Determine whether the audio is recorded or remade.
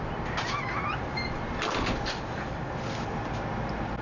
recorded